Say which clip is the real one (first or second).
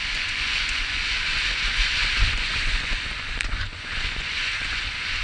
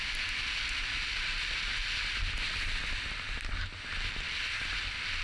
second